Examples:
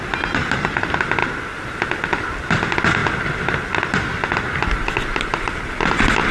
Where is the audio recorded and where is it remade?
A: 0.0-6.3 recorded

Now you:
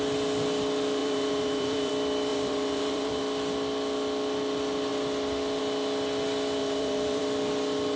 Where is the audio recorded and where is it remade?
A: 0.0-1.0 recorded; 1.0-1.9 remade; 1.9-2.3 recorded; 2.3-3.2 remade; 3.2-6.6 recorded; 6.6-7.2 remade; 7.2-8.0 recorded

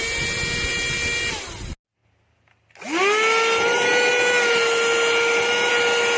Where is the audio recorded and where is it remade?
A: 0.0-6.2 recorded

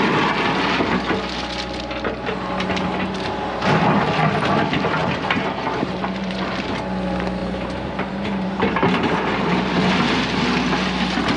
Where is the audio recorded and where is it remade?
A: 0.0-5.0 recorded; 5.0-6.7 remade; 6.7-7.4 recorded; 7.4-10.2 remade; 10.2-11.4 recorded

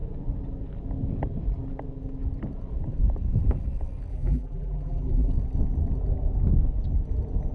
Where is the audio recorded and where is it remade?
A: 0.0-4.1 recorded; 4.1-5.3 remade; 5.3-7.5 recorded

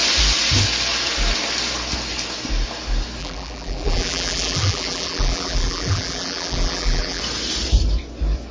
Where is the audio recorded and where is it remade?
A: 0.0-3.2 recorded; 3.2-7.2 remade; 7.2-8.5 recorded

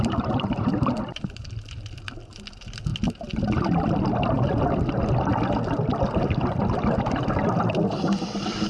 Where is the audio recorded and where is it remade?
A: 0.0-2.9 remade; 2.9-7.7 recorded; 7.7-8.7 remade